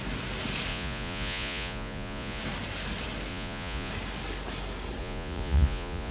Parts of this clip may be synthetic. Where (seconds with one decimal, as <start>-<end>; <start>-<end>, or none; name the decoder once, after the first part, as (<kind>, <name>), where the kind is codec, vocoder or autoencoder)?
0.7-2.4 (vocoder, Vocos); 3.3-3.9; 5.0-6.1